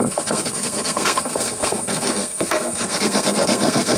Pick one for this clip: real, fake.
fake